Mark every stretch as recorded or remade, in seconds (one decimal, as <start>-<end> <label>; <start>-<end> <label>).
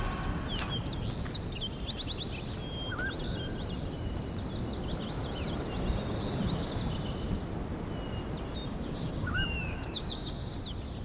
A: 0.0-8.7 recorded; 8.7-10.3 remade; 10.3-11.0 recorded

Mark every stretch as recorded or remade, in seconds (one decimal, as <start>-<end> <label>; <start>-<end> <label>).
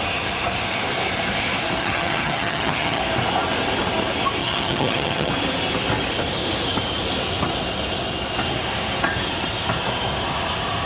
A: 0.0-1.8 recorded; 1.8-3.0 remade; 3.0-4.4 recorded; 4.4-5.3 remade; 5.3-10.9 recorded